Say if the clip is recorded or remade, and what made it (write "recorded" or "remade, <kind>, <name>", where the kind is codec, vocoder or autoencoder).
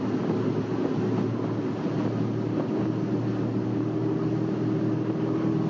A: recorded